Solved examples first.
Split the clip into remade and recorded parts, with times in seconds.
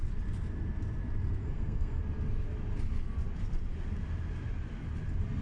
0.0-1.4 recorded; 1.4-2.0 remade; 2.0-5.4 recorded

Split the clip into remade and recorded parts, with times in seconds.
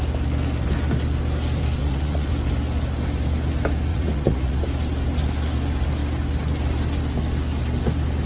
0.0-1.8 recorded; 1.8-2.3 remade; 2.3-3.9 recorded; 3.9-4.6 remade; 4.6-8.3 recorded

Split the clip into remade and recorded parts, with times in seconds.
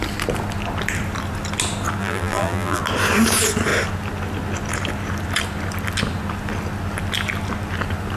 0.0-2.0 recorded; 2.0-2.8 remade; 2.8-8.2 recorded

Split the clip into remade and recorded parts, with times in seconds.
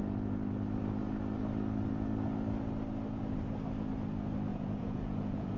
0.0-4.5 recorded; 4.5-5.6 remade